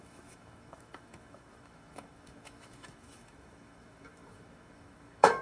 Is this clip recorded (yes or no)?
no